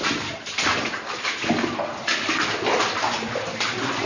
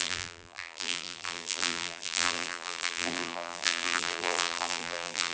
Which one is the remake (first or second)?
second